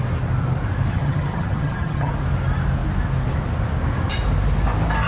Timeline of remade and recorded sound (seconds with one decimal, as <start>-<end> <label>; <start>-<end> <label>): 0.0-0.9 recorded; 0.9-2.1 remade; 2.1-5.1 recorded